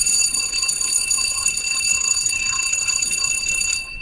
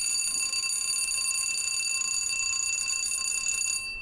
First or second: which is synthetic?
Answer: first